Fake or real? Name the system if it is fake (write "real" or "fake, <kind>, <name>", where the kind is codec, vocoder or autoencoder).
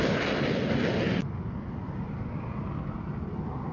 real